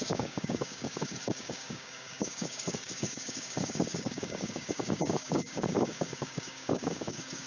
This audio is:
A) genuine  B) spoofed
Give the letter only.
B